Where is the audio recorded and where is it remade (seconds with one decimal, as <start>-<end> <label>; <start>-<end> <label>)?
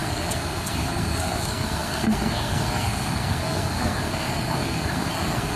0.0-5.6 remade